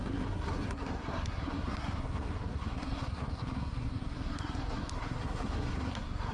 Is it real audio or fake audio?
fake